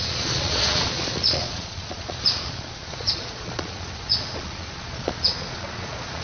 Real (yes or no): no